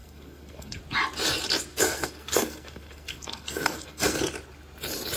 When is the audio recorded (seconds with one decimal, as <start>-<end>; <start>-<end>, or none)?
0.8-1.7; 4.2-5.2